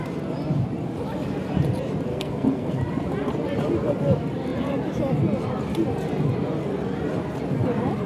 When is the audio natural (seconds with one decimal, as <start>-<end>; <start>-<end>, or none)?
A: 0.0-2.1; 2.8-8.1